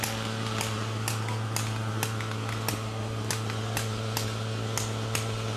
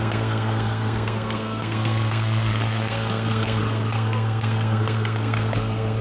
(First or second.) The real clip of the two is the first